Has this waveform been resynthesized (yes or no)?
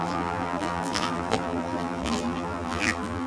yes